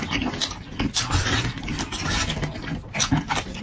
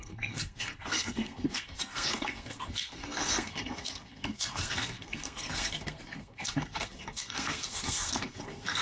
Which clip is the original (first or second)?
first